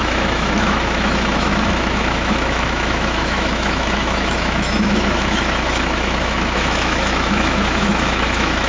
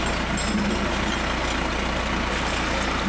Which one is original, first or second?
second